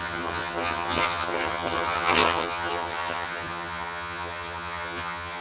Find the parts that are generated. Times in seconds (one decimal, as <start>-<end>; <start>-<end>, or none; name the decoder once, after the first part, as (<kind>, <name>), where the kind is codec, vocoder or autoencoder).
0.0-5.4 (vocoder, HiFi-GAN)